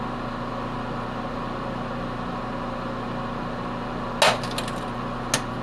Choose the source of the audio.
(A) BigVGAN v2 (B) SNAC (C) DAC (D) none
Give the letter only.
D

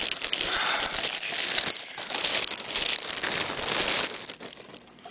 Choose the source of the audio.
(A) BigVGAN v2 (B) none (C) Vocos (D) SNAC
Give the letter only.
B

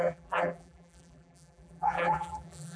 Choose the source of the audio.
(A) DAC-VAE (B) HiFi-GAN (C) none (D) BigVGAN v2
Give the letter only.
D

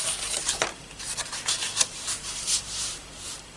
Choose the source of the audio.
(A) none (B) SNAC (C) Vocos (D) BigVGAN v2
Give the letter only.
D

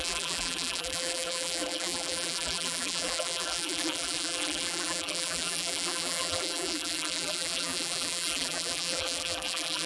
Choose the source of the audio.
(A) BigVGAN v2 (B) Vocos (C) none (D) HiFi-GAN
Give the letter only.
A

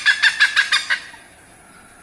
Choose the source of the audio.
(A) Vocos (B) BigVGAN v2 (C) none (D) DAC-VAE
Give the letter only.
C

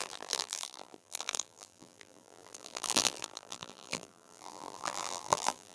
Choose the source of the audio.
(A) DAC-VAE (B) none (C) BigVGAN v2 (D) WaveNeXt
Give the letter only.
C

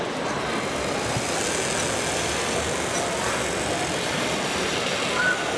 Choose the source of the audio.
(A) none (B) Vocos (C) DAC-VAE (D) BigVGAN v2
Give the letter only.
A